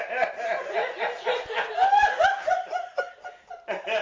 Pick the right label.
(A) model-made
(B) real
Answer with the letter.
B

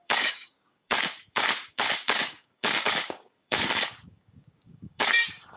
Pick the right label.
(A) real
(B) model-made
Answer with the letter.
B